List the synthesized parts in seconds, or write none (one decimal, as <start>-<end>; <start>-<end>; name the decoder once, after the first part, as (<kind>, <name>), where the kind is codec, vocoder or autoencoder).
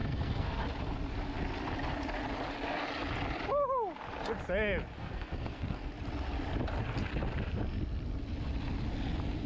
0.0-0.6 (codec, SNAC); 5.0-5.9